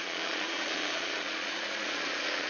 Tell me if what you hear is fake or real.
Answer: fake